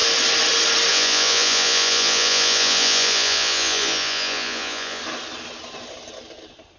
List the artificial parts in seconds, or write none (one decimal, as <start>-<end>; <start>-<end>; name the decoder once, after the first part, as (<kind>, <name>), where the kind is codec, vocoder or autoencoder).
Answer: 0.9-5.0 (vocoder, Vocos)